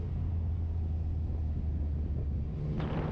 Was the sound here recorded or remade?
recorded